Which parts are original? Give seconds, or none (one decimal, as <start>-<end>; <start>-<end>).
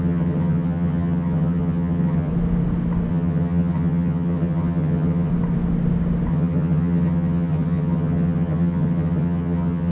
2.3-3.1; 5.3-6.3